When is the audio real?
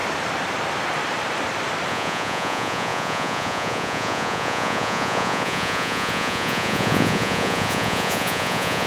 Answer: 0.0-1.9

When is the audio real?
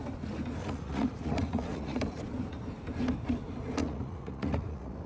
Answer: 0.0-0.6; 2.2-3.8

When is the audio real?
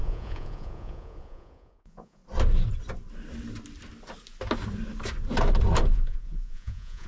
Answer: 2.2-5.9